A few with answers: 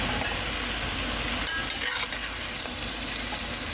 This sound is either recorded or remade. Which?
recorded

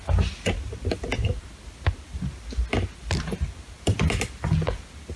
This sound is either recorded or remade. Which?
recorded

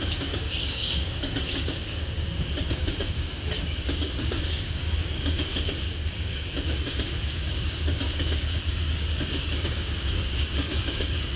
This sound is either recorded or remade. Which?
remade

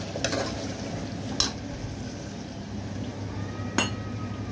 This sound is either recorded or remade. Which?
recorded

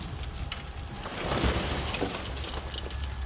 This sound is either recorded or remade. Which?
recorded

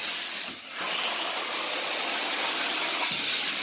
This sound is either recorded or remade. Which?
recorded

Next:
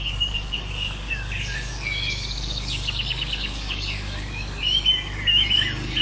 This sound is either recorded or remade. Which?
remade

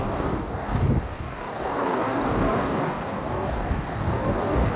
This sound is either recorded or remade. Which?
remade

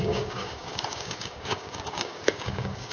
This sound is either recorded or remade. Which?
remade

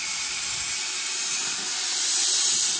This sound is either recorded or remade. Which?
recorded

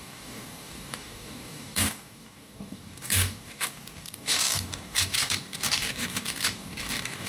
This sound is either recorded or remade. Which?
remade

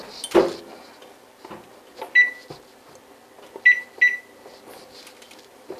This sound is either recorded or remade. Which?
recorded